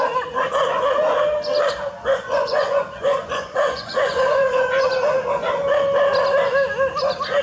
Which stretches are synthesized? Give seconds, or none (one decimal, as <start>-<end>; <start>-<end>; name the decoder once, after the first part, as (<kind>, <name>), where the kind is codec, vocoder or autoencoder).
2.1-4.9 (vocoder, Vocos)